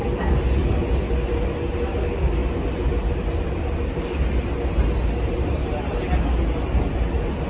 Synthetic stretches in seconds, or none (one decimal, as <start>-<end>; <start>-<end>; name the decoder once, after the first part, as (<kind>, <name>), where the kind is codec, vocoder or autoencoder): none